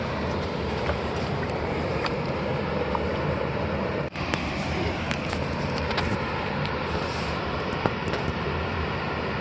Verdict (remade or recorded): remade